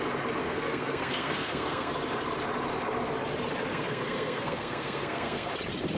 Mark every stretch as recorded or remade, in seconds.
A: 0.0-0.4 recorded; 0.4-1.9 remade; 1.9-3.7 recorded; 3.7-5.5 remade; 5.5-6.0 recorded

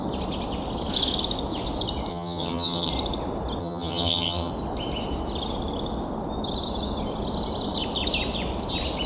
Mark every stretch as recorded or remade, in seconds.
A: 0.0-2.1 recorded; 2.1-2.9 remade; 2.9-3.6 recorded; 3.6-4.5 remade; 4.5-9.1 recorded

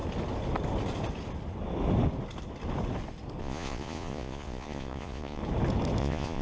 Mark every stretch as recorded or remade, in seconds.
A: 0.0-3.4 recorded; 3.4-5.4 remade; 5.4-6.0 recorded; 6.0-6.4 remade

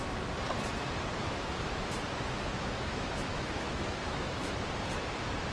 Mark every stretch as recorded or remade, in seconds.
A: 0.0-1.2 recorded; 1.2-4.5 remade; 4.5-5.5 recorded

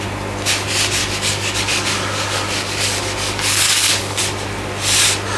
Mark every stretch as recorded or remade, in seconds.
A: 0.0-1.0 recorded; 1.0-4.2 remade; 4.2-5.4 recorded

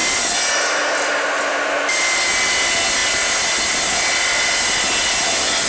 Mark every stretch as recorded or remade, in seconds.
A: 0.0-5.7 recorded